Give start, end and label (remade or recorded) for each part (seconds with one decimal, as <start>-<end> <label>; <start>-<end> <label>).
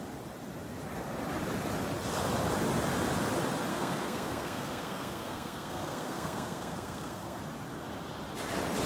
0.0-3.7 recorded; 3.7-7.4 remade; 7.4-8.9 recorded